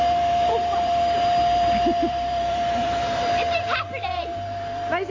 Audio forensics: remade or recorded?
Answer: remade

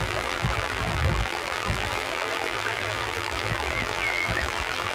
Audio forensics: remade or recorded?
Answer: remade